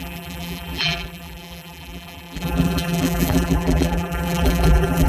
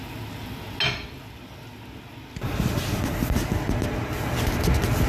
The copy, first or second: first